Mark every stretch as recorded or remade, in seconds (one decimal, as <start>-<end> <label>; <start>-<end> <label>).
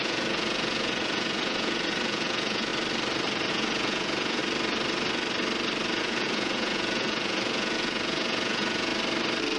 0.0-2.7 remade; 2.7-3.5 recorded; 3.5-4.4 remade; 4.4-6.0 recorded; 6.0-8.9 remade; 8.9-9.6 recorded